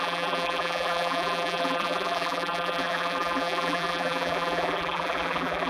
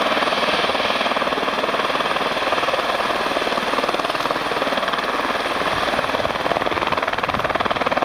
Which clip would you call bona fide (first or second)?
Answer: second